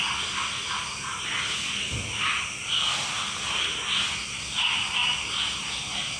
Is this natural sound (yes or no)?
yes